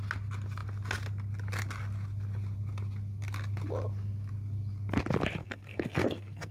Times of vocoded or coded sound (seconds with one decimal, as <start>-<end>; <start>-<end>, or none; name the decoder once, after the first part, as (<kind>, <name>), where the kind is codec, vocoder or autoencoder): 5.4-6.5 (codec, SNAC)